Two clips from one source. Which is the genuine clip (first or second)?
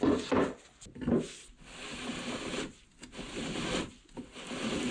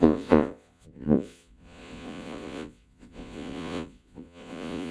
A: first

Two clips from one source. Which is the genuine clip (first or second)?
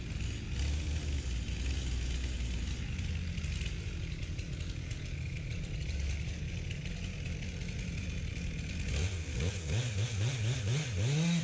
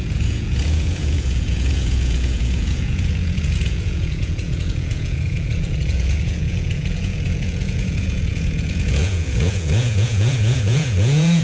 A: first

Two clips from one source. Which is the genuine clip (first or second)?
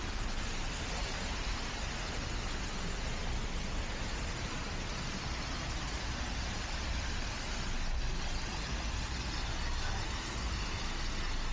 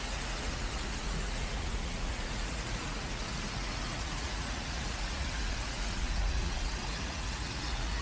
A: first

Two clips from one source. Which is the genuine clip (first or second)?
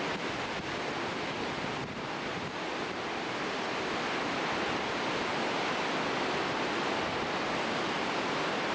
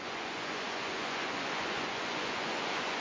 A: first